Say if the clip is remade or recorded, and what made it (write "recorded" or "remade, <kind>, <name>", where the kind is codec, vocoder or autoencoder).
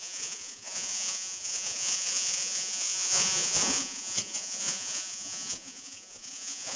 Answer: remade, vocoder, Vocos